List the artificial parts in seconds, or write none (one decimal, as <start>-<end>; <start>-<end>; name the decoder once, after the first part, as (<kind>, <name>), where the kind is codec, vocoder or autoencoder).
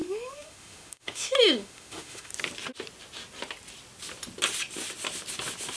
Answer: 0.0-2.3 (autoencoder, DAC-VAE)